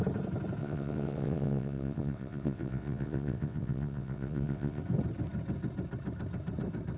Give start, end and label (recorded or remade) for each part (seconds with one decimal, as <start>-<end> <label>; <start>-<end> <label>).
0.0-0.6 recorded; 0.6-4.8 remade; 4.8-7.0 recorded